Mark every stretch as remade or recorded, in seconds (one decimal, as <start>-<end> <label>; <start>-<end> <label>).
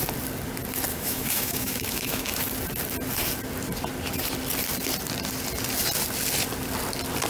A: 0.0-0.9 recorded; 0.9-2.4 remade; 2.4-7.3 recorded